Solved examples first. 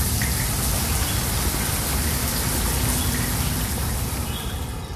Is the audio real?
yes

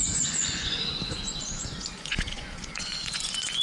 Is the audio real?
no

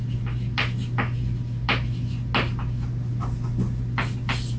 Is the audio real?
yes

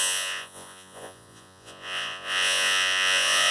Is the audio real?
no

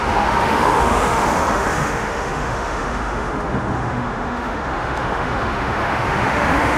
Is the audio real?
no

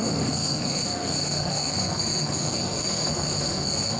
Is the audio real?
no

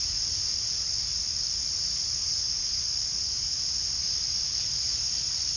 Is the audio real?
yes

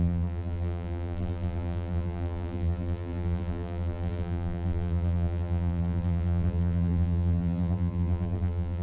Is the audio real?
no